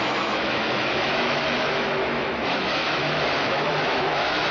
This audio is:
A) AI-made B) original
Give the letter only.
A